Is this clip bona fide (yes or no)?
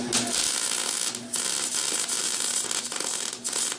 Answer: yes